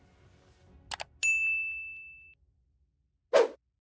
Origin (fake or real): real